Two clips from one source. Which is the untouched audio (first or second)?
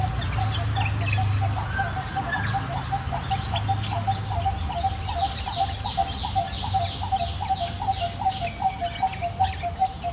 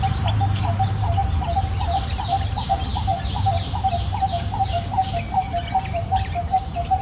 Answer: first